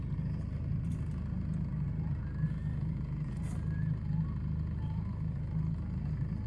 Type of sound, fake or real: real